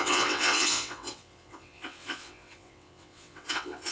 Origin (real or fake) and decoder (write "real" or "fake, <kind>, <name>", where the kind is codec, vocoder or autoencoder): fake, vocoder, WaveNeXt